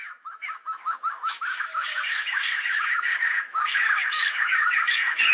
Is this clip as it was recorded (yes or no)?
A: no